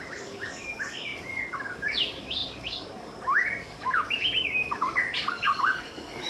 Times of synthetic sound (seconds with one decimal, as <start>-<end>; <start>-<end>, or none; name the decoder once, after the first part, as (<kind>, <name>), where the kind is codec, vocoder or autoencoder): 0.0-6.3 (codec, DAC)

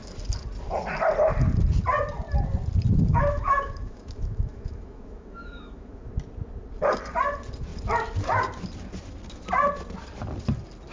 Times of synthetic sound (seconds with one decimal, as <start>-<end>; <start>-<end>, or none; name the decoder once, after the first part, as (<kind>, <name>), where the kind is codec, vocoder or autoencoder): 3.1-6.1 (autoencoder, DAC-VAE)

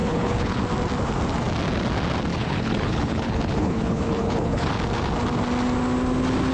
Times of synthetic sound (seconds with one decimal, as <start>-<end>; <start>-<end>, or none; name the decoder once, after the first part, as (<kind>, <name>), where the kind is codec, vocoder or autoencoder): 0.0-0.6 (codec, HILCodec); 2.3-4.7